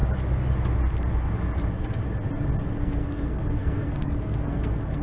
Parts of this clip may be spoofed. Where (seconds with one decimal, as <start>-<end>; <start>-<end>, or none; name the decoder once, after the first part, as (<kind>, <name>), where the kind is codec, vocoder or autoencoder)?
2.8-5.0 (codec, SNAC)